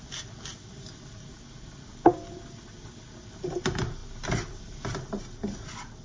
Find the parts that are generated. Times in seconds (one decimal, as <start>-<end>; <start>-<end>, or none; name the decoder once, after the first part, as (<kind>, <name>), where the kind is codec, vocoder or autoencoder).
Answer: none

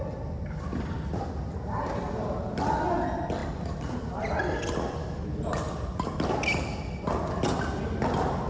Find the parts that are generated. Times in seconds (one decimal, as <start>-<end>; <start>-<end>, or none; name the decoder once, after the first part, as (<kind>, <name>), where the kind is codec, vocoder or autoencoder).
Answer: none

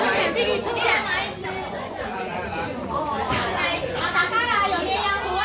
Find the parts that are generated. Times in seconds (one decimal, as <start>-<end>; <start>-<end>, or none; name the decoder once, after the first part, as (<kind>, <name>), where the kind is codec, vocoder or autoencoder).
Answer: 1.4-4.3 (vocoder, Vocos)

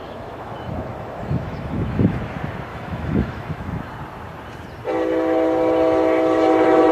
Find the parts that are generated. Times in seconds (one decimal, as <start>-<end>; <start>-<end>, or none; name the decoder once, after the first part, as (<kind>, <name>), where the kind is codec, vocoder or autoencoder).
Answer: 0.0-2.2 (autoencoder, DAC-VAE); 2.7-3.9

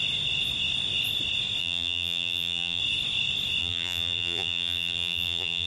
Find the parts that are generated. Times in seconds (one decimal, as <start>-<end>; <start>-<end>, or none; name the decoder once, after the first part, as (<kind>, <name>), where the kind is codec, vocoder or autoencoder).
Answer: 1.6-2.8 (vocoder, BigVGAN v2); 3.6-5.7

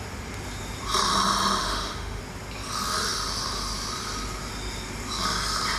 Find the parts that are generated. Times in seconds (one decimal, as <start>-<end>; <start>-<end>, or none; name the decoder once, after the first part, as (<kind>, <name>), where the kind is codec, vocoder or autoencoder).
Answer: 1.6-2.2 (autoencoder, DAC-VAE)

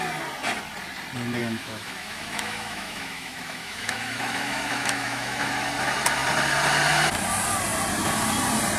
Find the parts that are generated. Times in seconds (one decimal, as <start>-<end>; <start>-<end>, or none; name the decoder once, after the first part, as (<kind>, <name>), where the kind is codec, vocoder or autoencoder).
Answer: 1.4-5.5 (autoencoder, DAC-VAE)